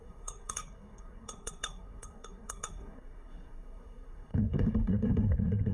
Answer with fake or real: fake